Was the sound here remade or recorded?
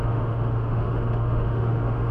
remade